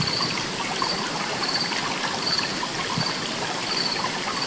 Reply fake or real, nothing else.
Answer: real